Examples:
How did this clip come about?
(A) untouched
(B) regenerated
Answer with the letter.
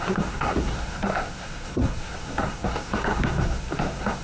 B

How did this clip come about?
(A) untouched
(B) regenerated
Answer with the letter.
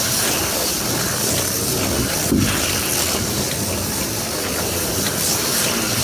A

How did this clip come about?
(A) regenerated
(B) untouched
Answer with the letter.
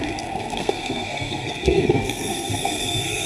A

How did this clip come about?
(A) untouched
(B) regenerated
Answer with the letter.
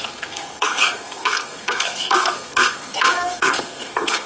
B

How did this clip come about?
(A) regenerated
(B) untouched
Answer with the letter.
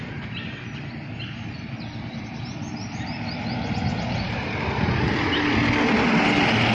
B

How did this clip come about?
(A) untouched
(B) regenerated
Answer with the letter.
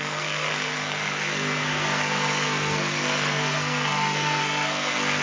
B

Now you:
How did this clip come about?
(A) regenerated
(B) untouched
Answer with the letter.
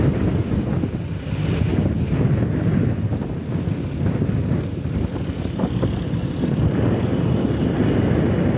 B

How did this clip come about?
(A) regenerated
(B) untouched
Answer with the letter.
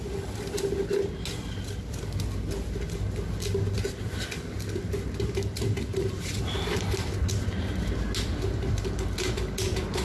B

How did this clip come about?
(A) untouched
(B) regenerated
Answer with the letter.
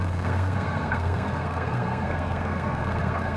B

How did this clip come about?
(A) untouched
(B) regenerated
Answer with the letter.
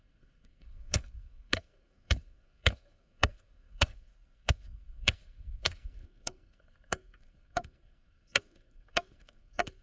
B